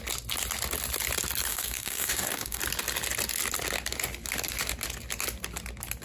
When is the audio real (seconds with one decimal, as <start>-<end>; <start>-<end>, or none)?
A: 0.0-1.5; 2.6-6.0